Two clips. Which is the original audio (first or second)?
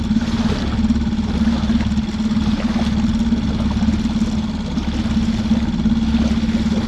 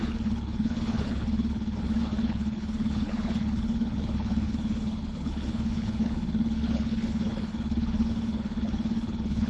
first